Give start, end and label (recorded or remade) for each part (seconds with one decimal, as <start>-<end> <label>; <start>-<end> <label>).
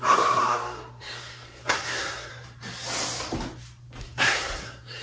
0.0-2.3 remade; 2.3-4.0 recorded; 4.0-5.0 remade